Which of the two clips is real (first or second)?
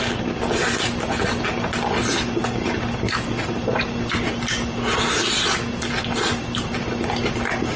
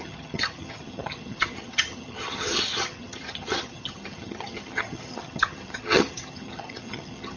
first